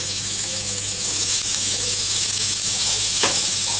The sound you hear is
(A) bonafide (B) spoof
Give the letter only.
B